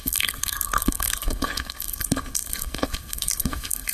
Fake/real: fake